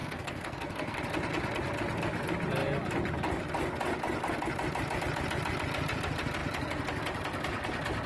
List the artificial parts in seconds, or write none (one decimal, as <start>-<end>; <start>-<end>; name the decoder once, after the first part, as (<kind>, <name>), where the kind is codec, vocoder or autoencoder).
0.0-1.0 (codec, SNAC)